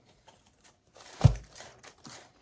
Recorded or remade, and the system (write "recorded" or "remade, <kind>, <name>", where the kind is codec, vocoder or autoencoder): remade, vocoder, BigVGAN v2